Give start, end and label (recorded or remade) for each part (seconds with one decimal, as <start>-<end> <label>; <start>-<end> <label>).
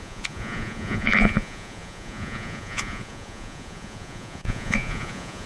0.0-5.5 remade